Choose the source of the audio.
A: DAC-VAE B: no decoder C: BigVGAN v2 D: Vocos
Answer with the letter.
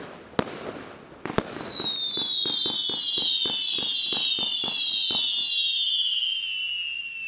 B